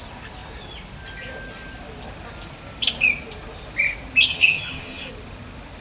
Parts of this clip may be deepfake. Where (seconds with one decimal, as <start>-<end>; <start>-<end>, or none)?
4.3-5.1

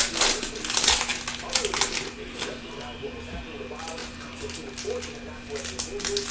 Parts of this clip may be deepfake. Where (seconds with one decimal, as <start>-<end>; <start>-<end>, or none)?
none

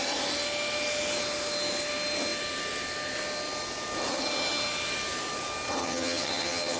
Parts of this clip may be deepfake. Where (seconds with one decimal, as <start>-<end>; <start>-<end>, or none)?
5.8-6.8

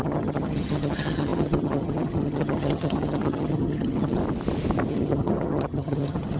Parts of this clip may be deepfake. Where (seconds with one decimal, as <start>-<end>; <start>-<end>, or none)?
0.0-4.2; 4.9-6.4

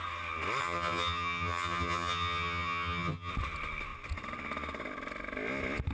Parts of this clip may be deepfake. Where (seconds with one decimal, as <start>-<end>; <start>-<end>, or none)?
0.6-3.3